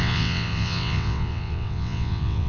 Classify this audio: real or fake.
fake